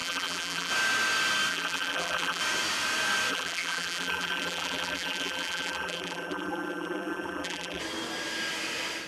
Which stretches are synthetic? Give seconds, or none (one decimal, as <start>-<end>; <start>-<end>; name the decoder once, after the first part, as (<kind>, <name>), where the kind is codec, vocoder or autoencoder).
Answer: 0.0-0.7 (vocoder, BigVGAN v2); 1.5-2.4; 3.3-7.8